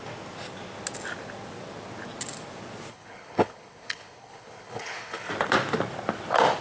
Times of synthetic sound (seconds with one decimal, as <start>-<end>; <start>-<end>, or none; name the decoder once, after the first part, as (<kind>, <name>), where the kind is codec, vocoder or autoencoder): 2.9-5.3 (codec, HILCodec)